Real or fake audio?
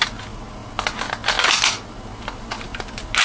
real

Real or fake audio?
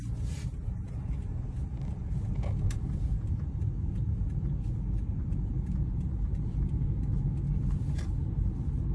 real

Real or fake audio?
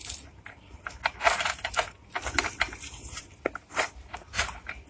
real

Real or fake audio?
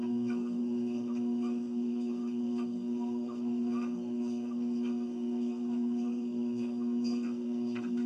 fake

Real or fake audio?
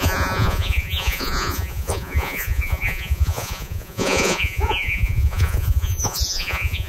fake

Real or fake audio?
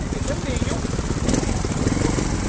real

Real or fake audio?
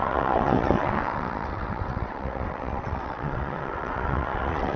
fake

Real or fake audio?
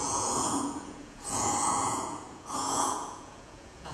fake